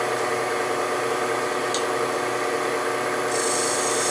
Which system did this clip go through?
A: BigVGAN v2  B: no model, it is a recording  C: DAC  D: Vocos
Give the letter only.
B